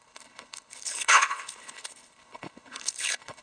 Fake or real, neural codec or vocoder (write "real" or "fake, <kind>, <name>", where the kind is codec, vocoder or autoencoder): fake, codec, HILCodec